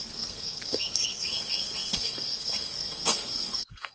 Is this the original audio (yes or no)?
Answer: no